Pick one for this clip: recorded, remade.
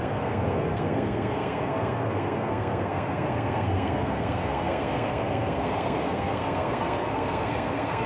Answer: remade